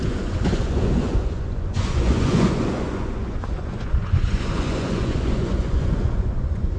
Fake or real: fake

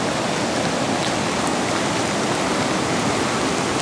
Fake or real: real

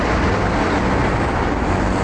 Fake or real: real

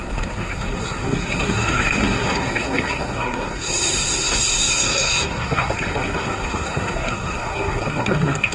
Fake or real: fake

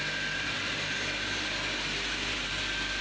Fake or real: real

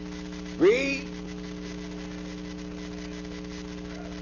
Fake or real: real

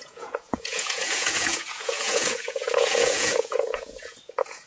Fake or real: fake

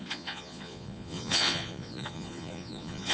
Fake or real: fake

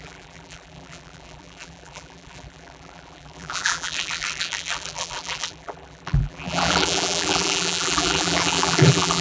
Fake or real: fake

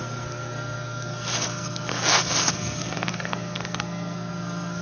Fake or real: fake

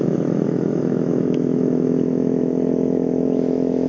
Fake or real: fake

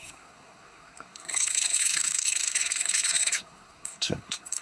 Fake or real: fake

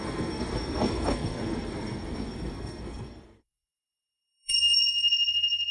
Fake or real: fake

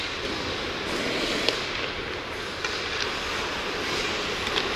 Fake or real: real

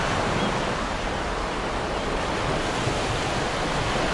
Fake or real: real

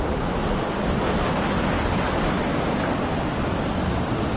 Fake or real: real